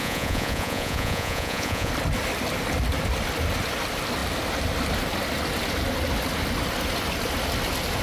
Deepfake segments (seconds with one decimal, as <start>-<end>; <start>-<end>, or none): 0.0-1.9